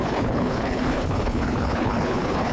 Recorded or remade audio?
remade